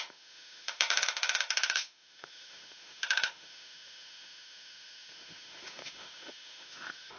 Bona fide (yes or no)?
no